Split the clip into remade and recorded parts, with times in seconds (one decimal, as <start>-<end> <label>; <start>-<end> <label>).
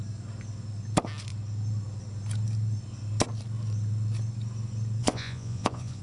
0.0-5.0 recorded; 5.0-6.0 remade